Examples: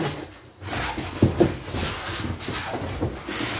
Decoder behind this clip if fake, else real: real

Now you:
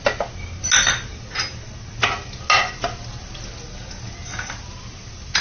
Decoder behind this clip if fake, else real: real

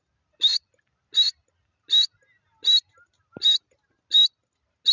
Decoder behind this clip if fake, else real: real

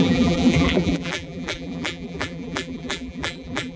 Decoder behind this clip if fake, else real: fake, vocoder, BigVGAN v2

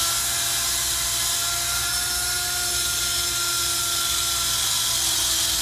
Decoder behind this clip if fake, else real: real